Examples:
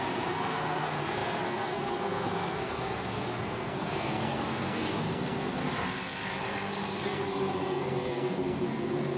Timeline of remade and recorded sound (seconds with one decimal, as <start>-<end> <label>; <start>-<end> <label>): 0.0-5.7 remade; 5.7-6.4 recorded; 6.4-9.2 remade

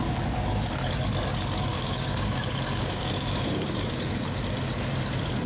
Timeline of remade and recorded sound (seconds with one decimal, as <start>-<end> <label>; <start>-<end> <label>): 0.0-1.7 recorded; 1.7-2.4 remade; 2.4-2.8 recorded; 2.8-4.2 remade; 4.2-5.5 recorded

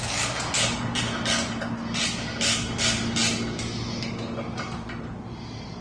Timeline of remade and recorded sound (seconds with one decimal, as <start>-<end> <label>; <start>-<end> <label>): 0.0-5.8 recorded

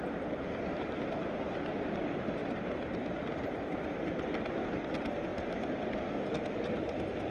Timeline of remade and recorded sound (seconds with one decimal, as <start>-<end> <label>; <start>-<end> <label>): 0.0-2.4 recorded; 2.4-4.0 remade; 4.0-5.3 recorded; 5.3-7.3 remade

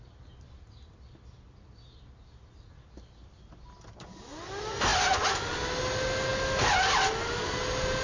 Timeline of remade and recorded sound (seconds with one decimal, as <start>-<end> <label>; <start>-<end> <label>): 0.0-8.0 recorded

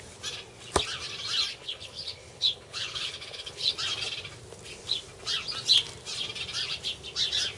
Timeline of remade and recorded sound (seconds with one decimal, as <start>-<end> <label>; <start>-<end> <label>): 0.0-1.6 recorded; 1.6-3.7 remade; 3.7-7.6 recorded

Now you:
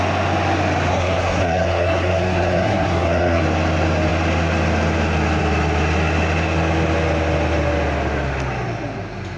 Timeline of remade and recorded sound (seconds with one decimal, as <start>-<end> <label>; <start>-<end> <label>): 0.0-0.9 recorded; 0.9-3.4 remade; 3.4-9.4 recorded

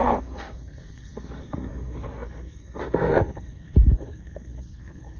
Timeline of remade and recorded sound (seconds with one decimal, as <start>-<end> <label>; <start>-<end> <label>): 0.0-5.2 remade